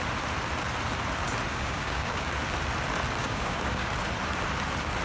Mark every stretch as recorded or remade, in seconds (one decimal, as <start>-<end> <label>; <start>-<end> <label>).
0.0-1.5 recorded; 1.5-2.3 remade; 2.3-3.2 recorded; 3.2-3.9 remade; 3.9-5.0 recorded

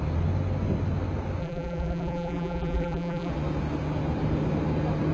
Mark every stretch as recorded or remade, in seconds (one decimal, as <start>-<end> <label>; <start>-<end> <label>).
0.0-1.4 recorded; 1.4-3.3 remade; 3.3-5.1 recorded

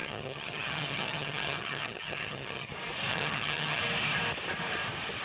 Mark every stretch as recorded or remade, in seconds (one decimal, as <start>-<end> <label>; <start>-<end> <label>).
0.0-2.7 remade; 2.7-3.1 recorded; 3.1-3.8 remade; 3.8-5.2 recorded

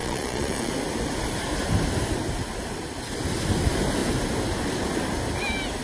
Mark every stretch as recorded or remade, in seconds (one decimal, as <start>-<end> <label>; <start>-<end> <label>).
0.0-0.7 remade; 0.7-5.8 recorded

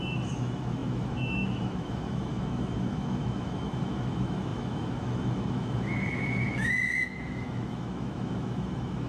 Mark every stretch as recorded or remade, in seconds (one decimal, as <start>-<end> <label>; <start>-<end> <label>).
0.0-9.1 remade